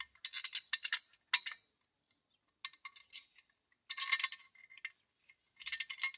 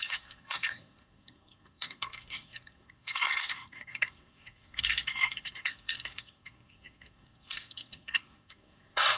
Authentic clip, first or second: first